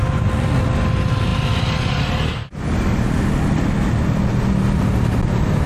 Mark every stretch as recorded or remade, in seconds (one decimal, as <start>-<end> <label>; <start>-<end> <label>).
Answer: 0.0-5.7 recorded